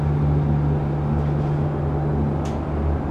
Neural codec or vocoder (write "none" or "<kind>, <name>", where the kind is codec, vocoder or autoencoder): none